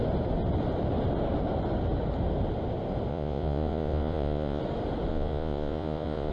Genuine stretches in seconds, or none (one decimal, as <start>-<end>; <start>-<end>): 0.0-3.1; 4.6-5.1